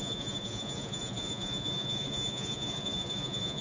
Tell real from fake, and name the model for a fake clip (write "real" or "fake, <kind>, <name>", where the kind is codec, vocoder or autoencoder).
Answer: fake, vocoder, Vocos